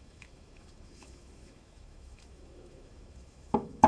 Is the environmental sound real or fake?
fake